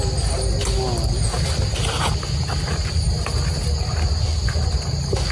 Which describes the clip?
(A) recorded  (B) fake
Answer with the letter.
A